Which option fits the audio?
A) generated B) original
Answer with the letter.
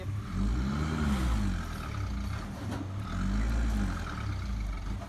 B